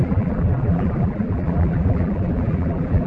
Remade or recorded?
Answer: remade